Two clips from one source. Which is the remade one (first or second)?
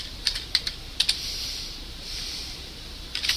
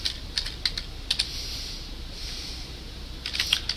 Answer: first